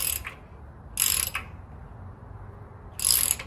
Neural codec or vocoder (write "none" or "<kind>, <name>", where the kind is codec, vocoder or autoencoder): none